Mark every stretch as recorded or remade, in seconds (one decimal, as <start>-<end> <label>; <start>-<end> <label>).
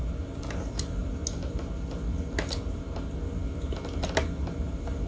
0.0-5.1 recorded